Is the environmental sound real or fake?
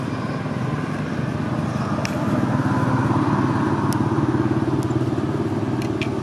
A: real